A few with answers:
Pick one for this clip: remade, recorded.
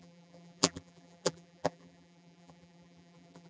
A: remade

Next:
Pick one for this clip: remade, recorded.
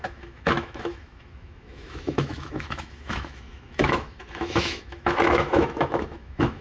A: remade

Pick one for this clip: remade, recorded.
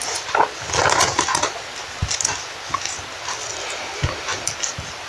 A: recorded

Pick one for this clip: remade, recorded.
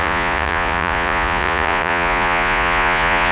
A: remade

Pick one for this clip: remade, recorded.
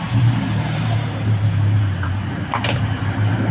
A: remade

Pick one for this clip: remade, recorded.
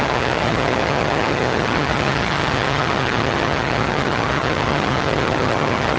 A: remade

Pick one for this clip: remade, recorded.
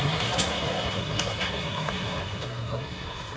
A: remade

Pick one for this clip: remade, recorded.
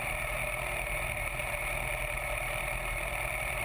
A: recorded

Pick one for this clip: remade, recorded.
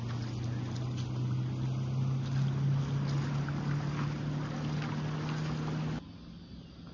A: recorded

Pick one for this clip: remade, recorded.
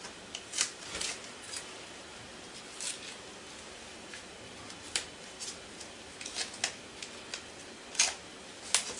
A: recorded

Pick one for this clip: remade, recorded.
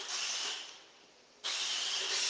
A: recorded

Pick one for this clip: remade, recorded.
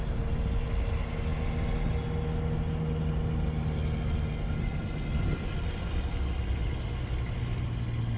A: recorded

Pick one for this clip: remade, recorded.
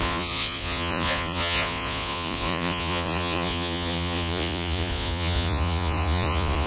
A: remade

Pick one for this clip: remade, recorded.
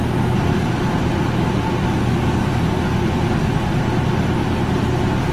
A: recorded